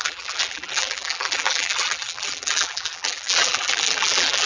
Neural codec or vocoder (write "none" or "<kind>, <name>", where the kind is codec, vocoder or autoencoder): vocoder, BigVGAN v2